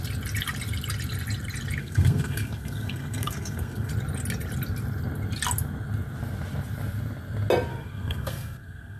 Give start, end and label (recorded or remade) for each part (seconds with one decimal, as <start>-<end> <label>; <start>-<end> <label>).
0.0-1.8 recorded; 1.8-3.9 remade; 3.9-7.7 recorded; 7.7-9.0 remade